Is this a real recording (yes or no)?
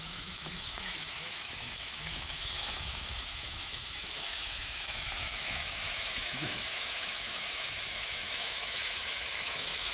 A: no